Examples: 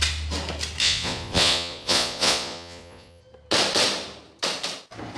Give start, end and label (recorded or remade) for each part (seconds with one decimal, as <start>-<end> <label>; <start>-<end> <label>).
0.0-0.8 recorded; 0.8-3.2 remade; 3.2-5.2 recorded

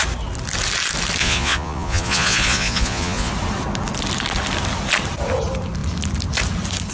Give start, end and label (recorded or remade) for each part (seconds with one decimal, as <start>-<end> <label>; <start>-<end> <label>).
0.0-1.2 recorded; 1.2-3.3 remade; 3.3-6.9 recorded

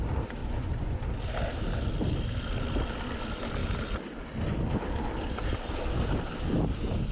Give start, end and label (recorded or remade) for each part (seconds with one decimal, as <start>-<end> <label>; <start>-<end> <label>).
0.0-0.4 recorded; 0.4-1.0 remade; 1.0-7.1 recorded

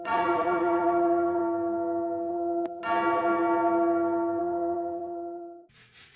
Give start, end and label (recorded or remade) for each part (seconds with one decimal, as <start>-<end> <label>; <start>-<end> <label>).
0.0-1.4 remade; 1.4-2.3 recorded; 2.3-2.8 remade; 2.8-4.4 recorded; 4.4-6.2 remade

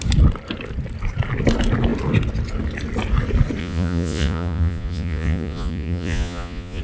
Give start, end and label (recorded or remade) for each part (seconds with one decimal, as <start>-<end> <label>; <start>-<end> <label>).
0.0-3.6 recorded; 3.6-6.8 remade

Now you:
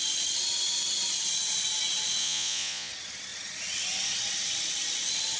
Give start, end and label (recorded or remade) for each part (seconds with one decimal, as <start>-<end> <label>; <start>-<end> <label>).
0.0-2.2 recorded; 2.2-2.9 remade; 2.9-5.4 recorded

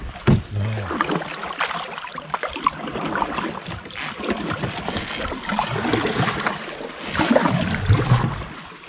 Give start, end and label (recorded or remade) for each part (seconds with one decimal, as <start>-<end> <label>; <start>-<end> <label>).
0.0-8.9 recorded